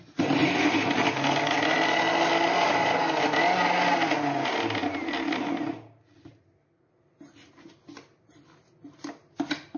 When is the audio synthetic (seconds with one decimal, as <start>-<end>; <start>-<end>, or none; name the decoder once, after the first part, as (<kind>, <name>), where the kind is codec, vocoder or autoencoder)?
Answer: none

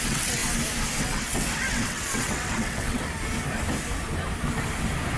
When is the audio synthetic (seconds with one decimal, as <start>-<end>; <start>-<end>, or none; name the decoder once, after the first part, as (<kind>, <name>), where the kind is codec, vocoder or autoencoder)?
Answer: 0.0-0.4 (vocoder, WaveNeXt); 1.0-3.0

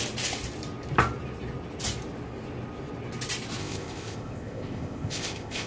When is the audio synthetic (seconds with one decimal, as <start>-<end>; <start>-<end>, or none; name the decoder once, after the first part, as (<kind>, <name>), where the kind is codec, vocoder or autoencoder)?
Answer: 3.6-5.7 (codec, ZipCodec)

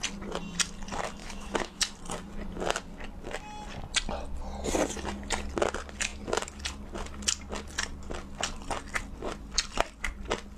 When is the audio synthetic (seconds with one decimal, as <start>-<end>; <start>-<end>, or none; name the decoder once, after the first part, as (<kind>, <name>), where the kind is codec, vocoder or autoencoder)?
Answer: 1.2-1.8 (autoencoder, DAC-VAE)

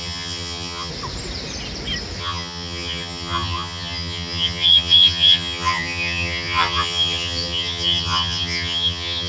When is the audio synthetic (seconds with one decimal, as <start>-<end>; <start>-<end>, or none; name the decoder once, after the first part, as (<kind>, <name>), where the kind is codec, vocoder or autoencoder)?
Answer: 0.0-0.9 (vocoder, HiFi-GAN); 2.2-9.3

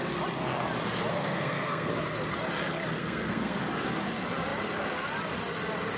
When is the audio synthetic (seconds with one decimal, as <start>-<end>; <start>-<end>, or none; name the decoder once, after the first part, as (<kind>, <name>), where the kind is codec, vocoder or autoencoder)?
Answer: 1.1-1.9 (codec, SNAC); 3.0-3.6